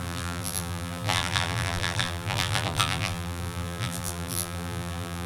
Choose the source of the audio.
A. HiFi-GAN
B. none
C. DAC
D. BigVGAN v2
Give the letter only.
D